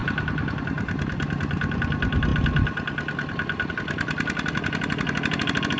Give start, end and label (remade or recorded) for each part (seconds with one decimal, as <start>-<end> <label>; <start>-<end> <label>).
0.0-5.8 recorded